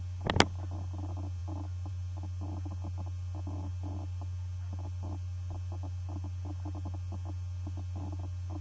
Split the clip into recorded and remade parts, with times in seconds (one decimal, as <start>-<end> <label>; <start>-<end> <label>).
0.0-8.6 recorded